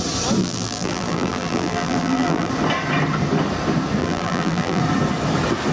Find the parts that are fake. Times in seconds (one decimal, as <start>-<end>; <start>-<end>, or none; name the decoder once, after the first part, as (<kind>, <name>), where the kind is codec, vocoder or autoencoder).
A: 0.4-2.5 (vocoder, BigVGAN v2); 4.0-4.8